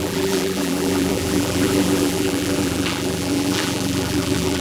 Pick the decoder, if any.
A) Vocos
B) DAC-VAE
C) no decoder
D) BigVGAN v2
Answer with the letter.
D